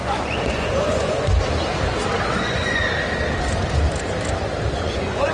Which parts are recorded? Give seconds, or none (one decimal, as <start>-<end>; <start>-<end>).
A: 1.3-2.4; 2.8-4.7